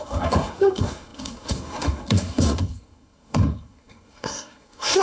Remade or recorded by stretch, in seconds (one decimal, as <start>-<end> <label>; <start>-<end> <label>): 0.0-5.0 remade

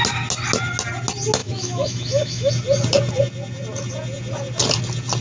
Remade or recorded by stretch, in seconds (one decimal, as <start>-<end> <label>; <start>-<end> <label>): 0.0-1.4 recorded; 1.4-2.5 remade; 2.5-5.2 recorded

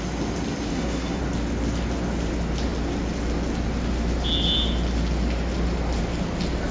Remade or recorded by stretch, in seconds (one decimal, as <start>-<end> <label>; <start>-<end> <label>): 0.0-0.7 recorded; 0.7-1.2 remade; 1.2-6.7 recorded

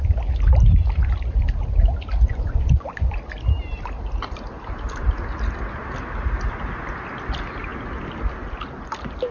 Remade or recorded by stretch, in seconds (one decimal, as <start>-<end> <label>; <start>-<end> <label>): 0.0-2.3 recorded; 2.3-3.1 remade; 3.1-9.3 recorded

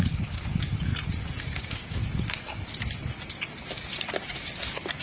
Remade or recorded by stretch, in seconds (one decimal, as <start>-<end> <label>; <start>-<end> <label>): 0.0-0.9 remade; 0.9-1.4 recorded; 1.4-2.0 remade; 2.0-5.0 recorded